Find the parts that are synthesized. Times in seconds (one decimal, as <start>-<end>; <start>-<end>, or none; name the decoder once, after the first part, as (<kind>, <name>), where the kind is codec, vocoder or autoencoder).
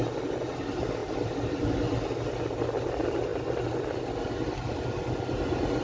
none